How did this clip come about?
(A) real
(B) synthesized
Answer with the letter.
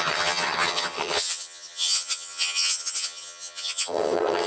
B